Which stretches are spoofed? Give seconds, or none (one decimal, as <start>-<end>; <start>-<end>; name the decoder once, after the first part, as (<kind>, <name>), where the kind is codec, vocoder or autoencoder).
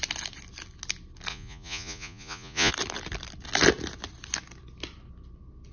1.3-2.7 (vocoder, Vocos)